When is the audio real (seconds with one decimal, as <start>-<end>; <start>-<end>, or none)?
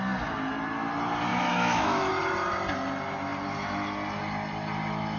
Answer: 0.0-1.3; 2.1-5.2